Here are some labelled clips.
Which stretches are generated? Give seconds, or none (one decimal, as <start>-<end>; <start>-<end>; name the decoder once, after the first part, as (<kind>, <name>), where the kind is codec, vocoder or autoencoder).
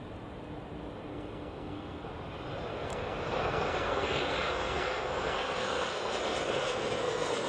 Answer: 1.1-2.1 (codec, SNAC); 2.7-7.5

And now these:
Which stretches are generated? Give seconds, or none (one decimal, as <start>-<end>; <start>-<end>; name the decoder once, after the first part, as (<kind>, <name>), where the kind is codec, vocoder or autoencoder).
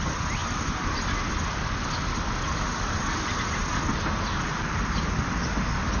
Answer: none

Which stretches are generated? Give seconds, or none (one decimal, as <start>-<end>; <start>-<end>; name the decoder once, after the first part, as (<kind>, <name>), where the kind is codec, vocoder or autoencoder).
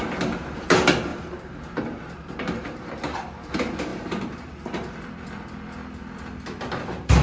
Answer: 1.1-2.9 (vocoder, BigVGAN v2); 3.9-5.0